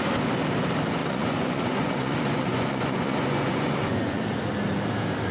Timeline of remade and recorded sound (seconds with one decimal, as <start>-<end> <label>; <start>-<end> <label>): 0.0-1.0 recorded; 1.0-4.2 remade; 4.2-5.3 recorded